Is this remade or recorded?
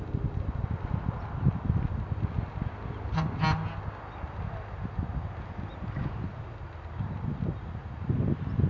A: recorded